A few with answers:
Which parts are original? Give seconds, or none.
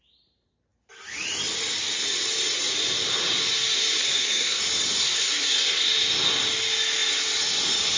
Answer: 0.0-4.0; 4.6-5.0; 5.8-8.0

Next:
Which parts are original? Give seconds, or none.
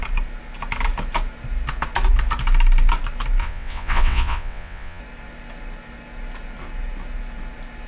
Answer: 0.0-3.4; 5.0-7.9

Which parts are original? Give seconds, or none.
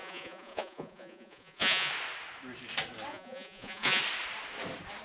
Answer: 1.9-3.1; 4.0-5.0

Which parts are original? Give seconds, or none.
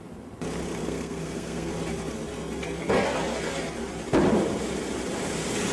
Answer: 0.0-0.8; 1.7-5.7